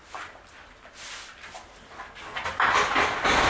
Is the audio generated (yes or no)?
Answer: no